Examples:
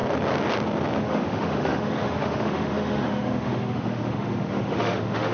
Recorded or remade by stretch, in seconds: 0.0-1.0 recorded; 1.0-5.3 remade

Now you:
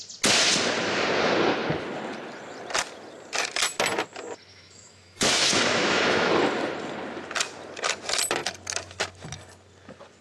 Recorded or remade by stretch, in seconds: 0.0-4.5 recorded; 4.5-6.3 remade; 6.3-10.2 recorded

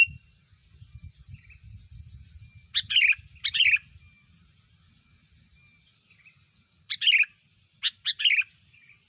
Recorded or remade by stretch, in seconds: 0.0-9.1 recorded

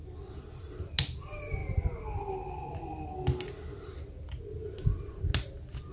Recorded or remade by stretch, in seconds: 0.0-5.9 recorded

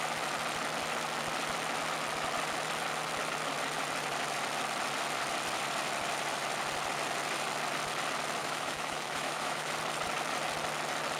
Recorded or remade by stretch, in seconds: 0.0-8.4 recorded; 8.4-9.7 remade; 9.7-11.2 recorded

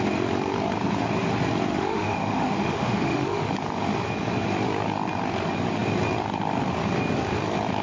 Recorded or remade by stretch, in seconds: 0.0-1.7 recorded; 1.7-3.5 remade; 3.5-7.8 recorded